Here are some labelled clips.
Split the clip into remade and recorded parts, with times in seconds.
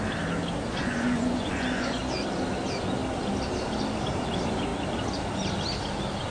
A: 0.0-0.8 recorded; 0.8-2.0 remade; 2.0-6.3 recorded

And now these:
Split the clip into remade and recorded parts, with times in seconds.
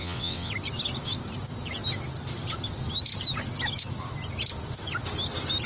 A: 0.0-0.5 remade; 0.5-5.7 recorded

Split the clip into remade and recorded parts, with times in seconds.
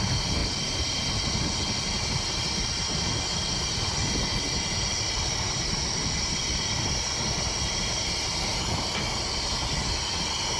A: 0.0-10.6 recorded